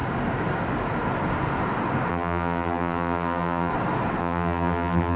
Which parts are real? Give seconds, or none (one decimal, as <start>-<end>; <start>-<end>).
0.0-2.1; 3.7-4.2